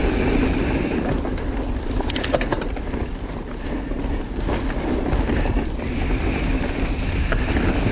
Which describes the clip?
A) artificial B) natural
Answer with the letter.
B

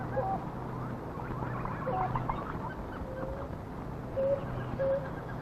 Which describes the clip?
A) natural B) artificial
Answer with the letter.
A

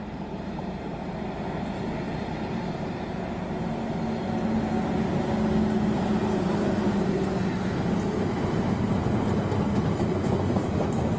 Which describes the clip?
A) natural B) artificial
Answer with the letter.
A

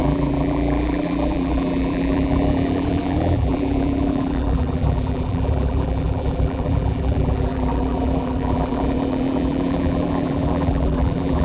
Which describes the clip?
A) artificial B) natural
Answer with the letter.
A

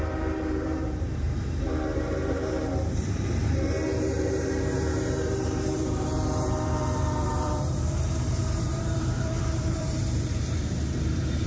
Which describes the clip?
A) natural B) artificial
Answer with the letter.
B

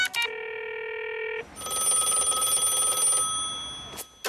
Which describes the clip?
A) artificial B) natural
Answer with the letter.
B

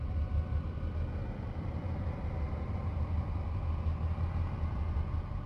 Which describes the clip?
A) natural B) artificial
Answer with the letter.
A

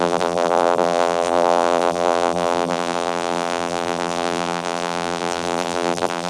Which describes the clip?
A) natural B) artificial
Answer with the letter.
B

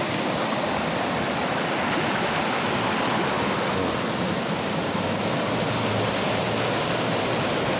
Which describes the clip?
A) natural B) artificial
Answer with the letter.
A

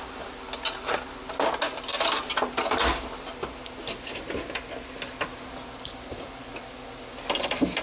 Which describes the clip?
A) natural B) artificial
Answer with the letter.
A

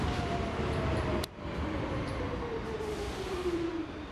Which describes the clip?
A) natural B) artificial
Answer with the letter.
B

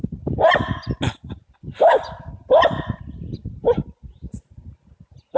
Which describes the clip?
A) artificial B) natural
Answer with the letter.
B